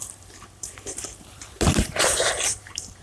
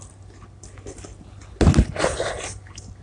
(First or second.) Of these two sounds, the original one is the second